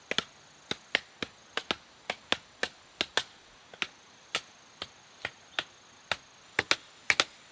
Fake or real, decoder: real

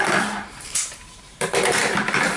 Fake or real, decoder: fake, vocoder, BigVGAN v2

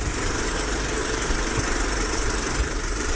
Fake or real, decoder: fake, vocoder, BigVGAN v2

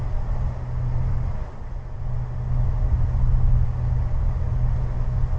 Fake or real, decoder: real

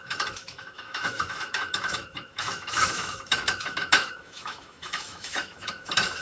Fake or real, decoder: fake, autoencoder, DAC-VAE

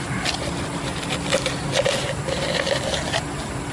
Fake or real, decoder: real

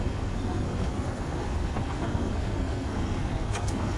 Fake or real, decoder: fake, codec, SNAC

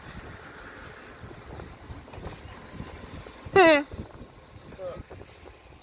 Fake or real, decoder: real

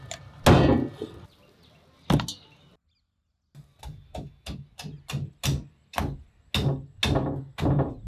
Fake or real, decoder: real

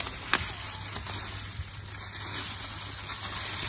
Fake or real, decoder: real